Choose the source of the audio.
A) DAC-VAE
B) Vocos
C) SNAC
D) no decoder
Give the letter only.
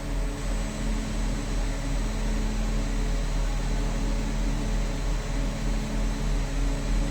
D